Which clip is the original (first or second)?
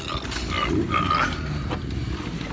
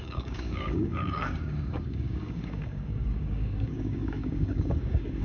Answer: first